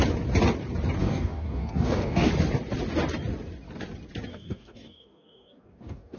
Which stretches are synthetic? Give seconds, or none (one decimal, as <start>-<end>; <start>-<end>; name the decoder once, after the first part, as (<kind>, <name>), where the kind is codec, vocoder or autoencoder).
1.0-2.3 (codec, DAC); 4.3-6.2